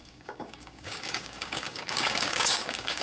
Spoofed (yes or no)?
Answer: yes